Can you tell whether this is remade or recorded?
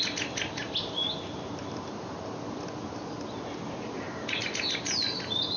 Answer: recorded